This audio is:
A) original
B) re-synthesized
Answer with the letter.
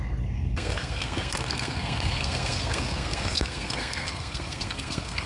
B